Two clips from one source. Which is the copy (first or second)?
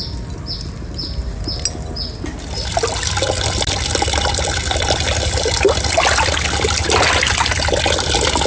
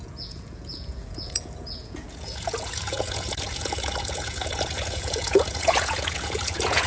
second